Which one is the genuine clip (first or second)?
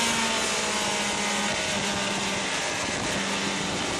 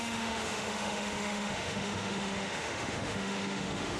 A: first